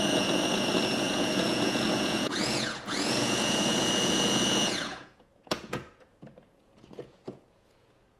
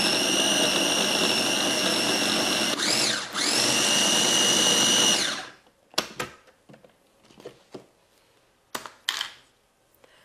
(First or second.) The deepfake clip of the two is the first